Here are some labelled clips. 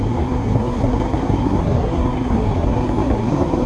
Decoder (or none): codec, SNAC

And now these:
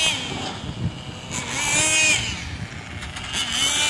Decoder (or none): none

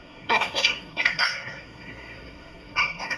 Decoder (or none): codec, SNAC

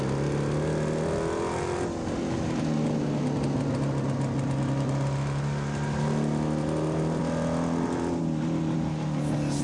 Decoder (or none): none